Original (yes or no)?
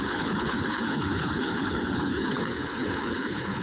no